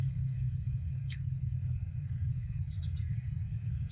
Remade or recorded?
remade